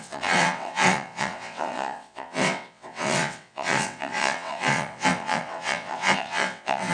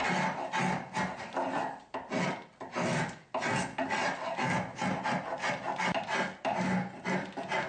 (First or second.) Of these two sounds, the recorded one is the second